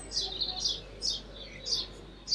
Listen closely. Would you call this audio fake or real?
real